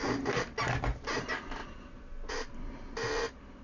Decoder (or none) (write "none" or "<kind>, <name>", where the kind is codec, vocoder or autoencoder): none